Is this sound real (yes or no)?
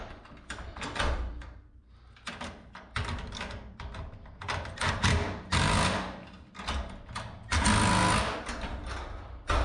yes